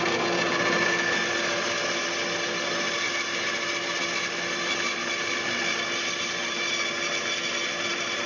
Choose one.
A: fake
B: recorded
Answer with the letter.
B